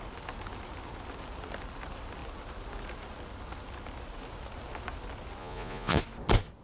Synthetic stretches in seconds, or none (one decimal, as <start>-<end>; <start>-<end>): 5.4-6.0